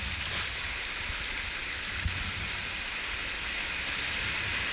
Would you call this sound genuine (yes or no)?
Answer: yes